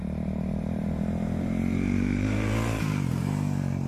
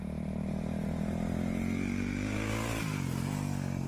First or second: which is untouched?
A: second